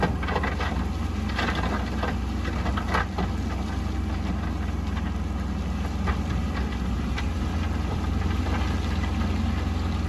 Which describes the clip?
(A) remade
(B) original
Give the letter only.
B